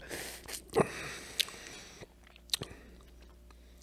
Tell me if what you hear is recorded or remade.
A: recorded